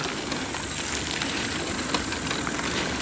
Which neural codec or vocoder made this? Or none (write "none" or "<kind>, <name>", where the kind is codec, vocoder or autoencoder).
none